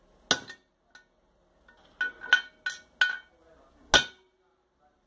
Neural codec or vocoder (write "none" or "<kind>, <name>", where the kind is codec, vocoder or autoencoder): none